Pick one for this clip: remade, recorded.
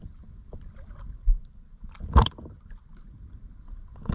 recorded